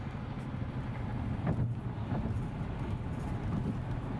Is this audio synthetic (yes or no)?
no